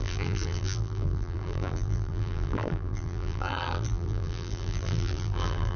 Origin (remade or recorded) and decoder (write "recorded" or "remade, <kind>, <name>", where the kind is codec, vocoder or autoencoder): remade, vocoder, BigVGAN v2